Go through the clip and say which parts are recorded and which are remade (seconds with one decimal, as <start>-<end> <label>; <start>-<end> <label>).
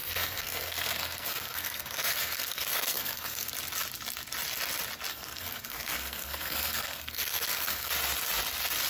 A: 0.0-3.5 remade; 3.5-5.1 recorded; 5.1-7.9 remade; 7.9-8.9 recorded